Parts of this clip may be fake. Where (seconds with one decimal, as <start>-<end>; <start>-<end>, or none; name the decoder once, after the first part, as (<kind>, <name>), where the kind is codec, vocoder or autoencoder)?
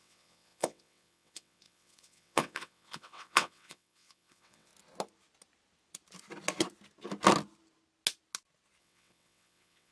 0.0-4.7 (vocoder, WaveNeXt); 8.8-9.9